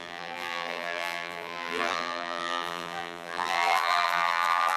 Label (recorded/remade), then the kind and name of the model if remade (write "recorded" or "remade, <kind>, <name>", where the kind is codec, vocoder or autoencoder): remade, vocoder, BigVGAN v2